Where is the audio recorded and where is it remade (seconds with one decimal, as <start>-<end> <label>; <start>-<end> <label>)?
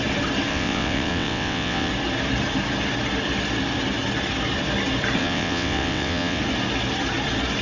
0.0-0.5 recorded; 0.5-1.9 remade; 1.9-5.2 recorded; 5.2-6.4 remade; 6.4-7.6 recorded